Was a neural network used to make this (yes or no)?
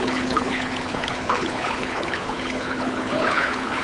yes